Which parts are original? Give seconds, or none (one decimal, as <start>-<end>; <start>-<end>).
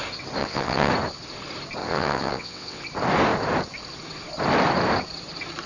0.0-0.4; 0.9-1.8; 2.8-5.7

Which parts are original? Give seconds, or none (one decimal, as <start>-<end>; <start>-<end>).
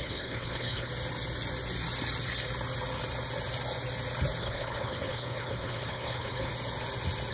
0.9-4.4; 6.5-7.3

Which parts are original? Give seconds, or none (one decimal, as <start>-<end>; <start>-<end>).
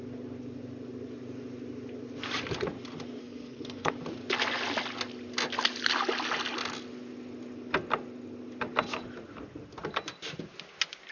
0.0-3.2; 3.9-11.1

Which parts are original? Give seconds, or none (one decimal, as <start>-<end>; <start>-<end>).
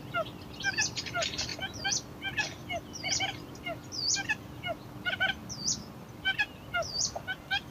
0.0-7.7